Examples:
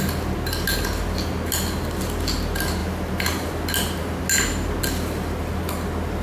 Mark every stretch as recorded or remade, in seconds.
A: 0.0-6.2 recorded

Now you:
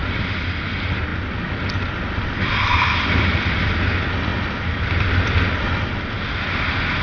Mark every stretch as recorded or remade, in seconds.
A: 0.0-7.0 recorded

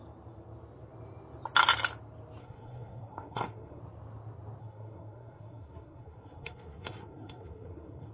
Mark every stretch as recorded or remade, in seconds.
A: 0.0-2.4 recorded; 2.4-3.8 remade; 3.8-4.6 recorded; 4.6-8.1 remade

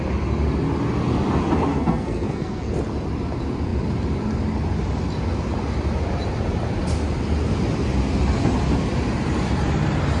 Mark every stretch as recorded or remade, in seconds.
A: 0.0-1.7 recorded; 1.7-2.7 remade; 2.7-10.2 recorded

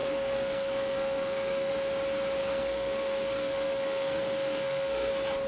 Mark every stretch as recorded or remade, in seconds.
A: 0.0-1.7 remade; 1.7-2.4 recorded; 2.4-5.1 remade; 5.1-5.5 recorded

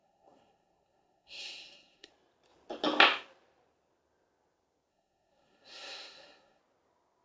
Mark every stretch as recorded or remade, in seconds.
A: 0.0-2.1 remade; 2.1-4.9 recorded; 4.9-6.6 remade; 6.6-7.2 recorded

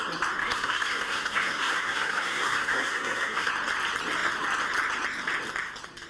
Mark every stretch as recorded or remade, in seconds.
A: 0.0-0.4 recorded; 0.4-3.5 remade; 3.5-6.1 recorded